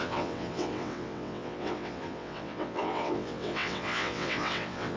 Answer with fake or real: fake